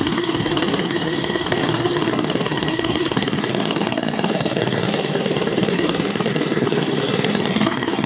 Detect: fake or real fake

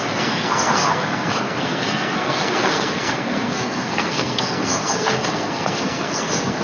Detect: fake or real fake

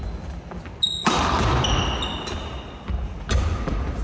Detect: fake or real real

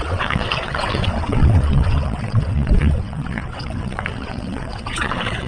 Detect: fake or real fake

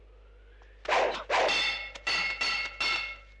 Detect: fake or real real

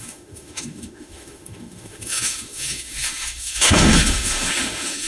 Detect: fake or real fake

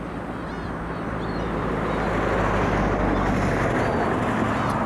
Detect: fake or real real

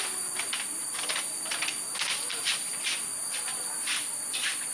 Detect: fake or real real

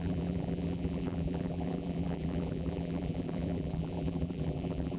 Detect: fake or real fake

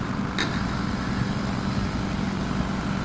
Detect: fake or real real